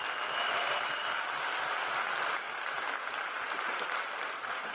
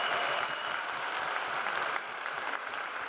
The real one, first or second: first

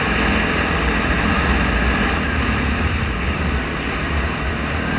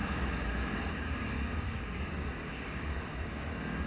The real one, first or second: first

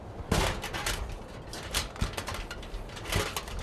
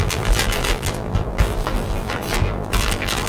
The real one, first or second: first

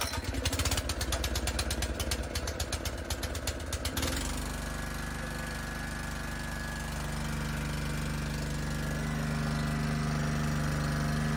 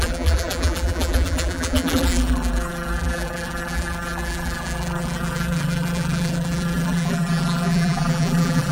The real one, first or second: first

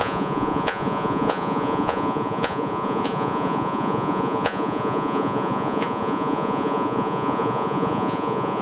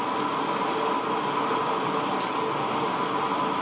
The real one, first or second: second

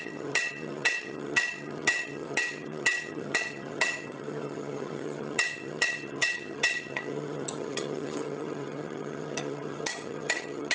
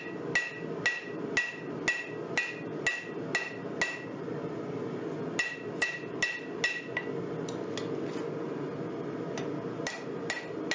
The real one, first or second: second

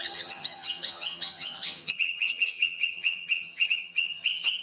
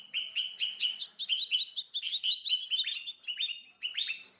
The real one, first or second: second